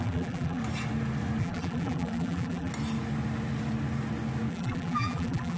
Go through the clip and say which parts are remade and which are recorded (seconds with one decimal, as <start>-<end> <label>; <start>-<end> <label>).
0.0-0.6 remade; 0.6-1.4 recorded; 1.4-2.7 remade; 2.7-4.5 recorded; 4.5-5.6 remade